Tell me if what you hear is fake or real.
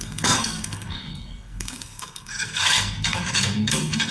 fake